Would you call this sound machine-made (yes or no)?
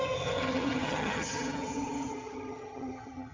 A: yes